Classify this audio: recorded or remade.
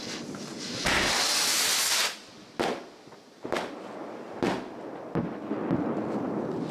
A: recorded